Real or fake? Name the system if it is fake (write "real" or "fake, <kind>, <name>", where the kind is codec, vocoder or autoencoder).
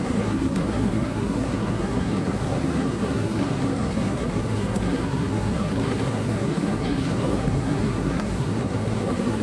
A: fake, codec, SNAC